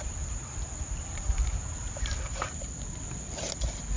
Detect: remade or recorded remade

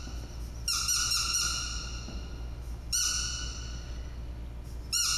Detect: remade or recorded recorded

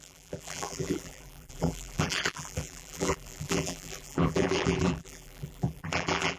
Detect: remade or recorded remade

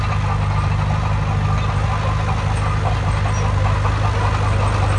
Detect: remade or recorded recorded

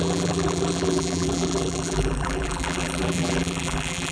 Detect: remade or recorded remade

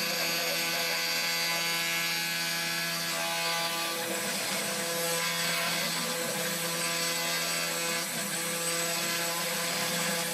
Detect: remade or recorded recorded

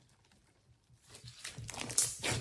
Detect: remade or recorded recorded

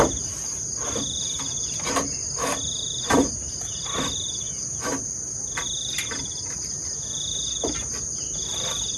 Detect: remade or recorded recorded